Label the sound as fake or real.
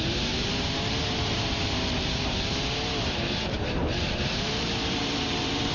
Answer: fake